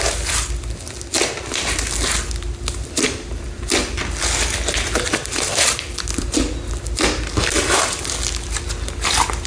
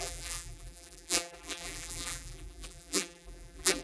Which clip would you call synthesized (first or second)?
second